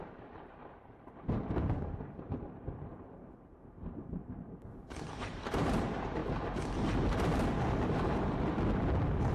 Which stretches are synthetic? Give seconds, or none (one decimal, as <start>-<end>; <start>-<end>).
0.0-6.2